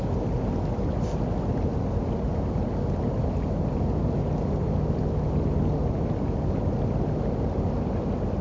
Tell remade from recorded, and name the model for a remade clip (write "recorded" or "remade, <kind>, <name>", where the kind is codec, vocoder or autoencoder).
recorded